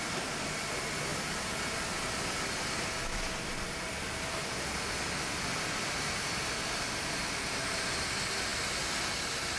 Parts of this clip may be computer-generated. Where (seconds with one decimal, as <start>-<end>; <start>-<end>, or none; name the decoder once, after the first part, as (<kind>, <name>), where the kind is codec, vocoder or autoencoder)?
none